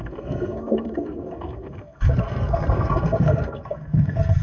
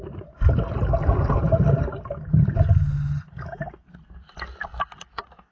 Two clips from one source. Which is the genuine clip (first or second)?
second